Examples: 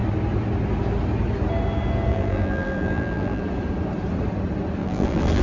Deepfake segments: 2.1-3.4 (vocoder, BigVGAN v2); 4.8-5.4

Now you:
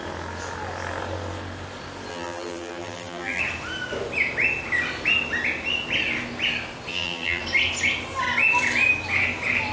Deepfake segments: 2.1-3.4 (vocoder, BigVGAN v2); 6.9-7.4

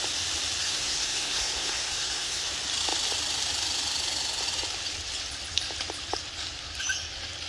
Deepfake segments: 0.6-2.5 (codec, SNAC)

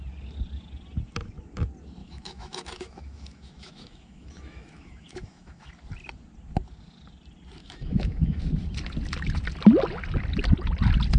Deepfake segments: 2.0-5.7 (autoencoder, DAC-VAE); 7.6-8.4

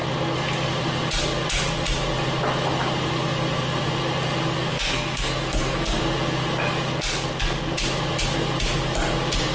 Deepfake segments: 4.7-6.0 (codec, SNAC)

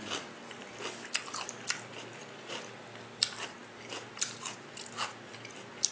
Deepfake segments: none